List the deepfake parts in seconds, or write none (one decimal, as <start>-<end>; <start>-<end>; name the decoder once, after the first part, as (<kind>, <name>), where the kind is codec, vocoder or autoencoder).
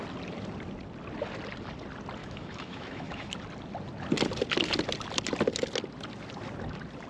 2.2-3.3 (autoencoder, DAC-VAE)